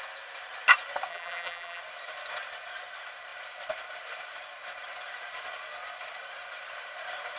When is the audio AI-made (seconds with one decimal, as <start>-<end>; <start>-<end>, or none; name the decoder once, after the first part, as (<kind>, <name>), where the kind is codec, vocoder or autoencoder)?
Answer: 1.1-1.8 (vocoder, BigVGAN v2)